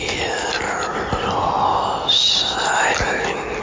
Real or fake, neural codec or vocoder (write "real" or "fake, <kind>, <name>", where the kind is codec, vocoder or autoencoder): real